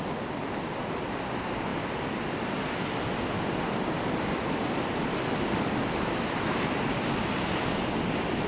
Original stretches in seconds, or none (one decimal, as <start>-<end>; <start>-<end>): 0.0-8.5